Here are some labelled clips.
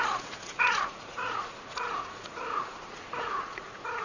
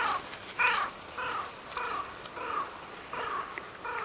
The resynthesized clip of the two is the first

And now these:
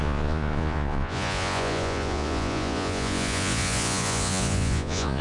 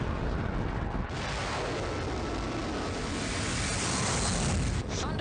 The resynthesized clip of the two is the first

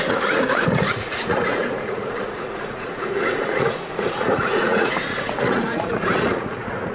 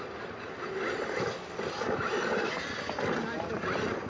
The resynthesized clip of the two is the first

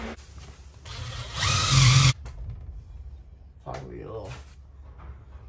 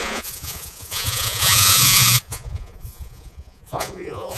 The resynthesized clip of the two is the second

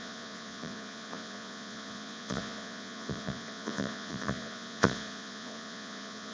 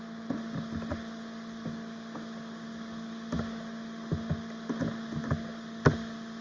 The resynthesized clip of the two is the first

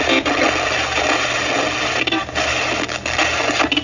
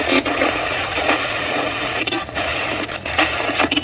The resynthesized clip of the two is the second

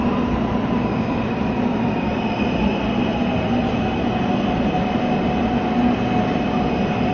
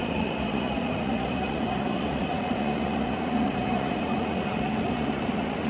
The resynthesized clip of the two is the second